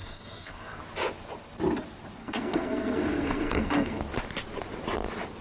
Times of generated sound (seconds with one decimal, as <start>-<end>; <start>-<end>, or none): 0.0-0.8; 2.2-4.0